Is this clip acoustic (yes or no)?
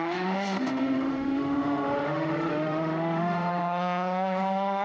no